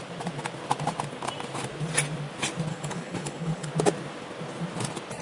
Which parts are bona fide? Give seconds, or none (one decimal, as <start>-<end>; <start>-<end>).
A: 0.0-2.7; 3.7-5.2